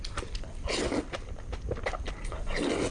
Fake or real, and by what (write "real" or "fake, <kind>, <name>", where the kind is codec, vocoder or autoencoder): real